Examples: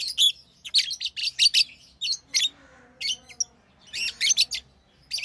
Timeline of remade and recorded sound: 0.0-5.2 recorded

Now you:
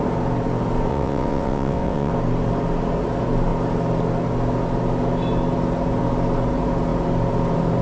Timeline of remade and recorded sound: 0.0-0.9 recorded; 0.9-2.1 remade; 2.1-7.8 recorded

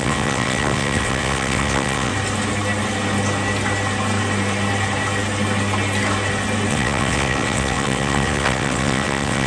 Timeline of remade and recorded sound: 0.0-2.1 remade; 2.1-6.7 recorded; 6.7-9.5 remade

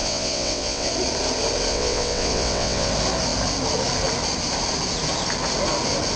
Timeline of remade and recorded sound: 0.0-0.9 remade; 0.9-1.7 recorded; 1.7-2.9 remade; 2.9-6.2 recorded